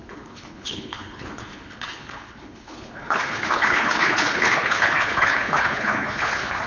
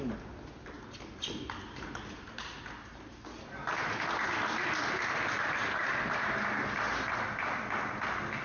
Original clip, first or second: second